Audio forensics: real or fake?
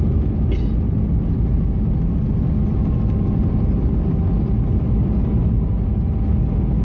real